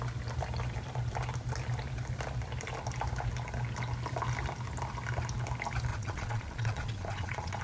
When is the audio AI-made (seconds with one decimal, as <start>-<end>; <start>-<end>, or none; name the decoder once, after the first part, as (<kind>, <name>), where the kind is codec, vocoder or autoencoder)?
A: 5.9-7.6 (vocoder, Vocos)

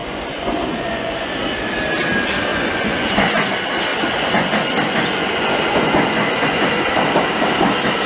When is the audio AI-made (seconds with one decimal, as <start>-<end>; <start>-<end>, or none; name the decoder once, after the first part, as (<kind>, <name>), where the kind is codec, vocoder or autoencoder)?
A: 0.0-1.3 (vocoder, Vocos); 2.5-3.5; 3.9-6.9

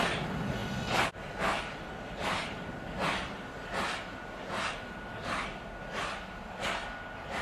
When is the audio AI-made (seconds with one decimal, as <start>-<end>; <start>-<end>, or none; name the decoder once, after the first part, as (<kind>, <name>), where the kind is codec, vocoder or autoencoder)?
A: none

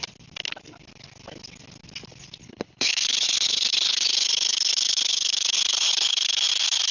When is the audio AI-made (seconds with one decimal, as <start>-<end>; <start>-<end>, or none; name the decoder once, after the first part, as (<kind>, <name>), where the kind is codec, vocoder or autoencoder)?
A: 2.4-6.5 (codec, HILCodec)

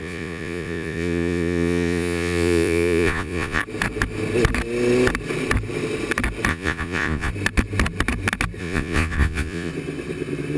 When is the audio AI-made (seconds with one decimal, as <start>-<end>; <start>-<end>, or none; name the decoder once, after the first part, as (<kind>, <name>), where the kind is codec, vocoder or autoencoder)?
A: 0.0-3.6 (vocoder, Vocos); 6.5-7.3; 8.6-9.7